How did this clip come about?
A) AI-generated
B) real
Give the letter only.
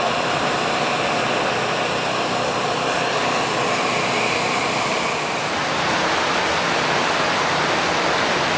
B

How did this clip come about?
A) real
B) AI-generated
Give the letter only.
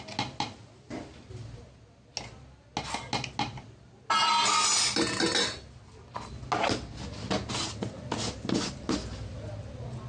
A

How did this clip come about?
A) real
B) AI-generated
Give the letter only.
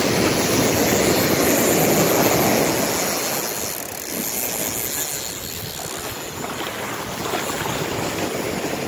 A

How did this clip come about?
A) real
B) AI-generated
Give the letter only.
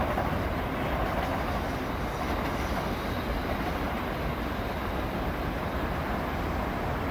A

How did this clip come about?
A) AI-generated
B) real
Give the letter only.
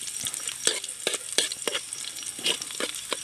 B